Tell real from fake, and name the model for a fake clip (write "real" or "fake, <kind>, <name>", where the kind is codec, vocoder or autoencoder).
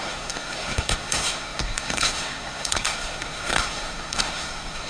fake, codec, SNAC